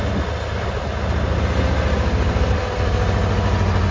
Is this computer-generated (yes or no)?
no